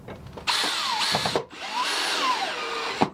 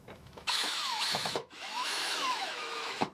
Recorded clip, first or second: first